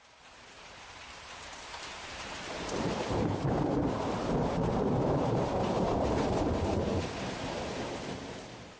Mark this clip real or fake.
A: fake